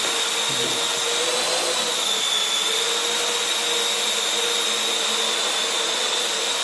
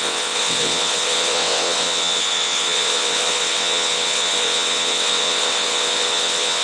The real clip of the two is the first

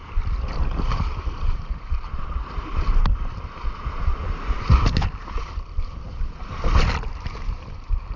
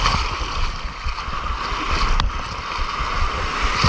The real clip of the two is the second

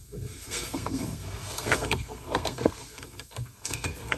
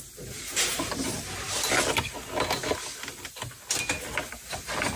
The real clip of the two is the second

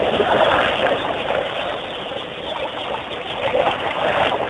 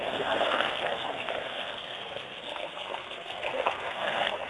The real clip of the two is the first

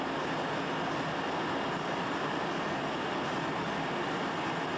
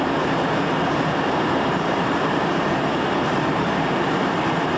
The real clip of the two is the first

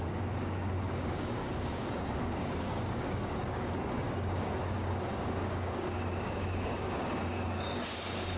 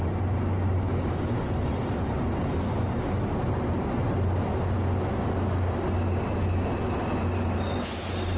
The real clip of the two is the second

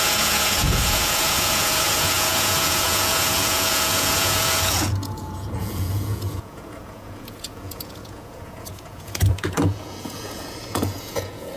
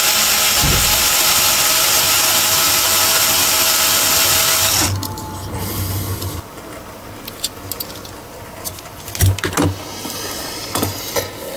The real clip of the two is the second